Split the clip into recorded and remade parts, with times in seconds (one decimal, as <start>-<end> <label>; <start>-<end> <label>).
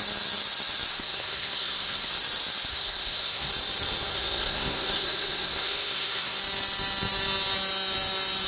0.0-0.9 recorded; 0.9-2.1 remade; 2.1-2.7 recorded; 2.7-3.5 remade; 3.5-4.1 recorded; 4.1-6.4 remade; 6.4-8.5 recorded